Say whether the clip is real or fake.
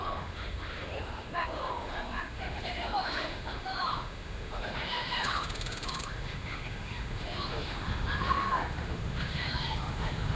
fake